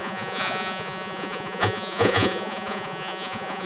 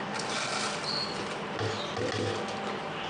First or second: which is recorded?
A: second